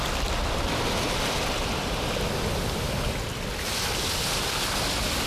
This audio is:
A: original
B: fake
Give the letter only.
A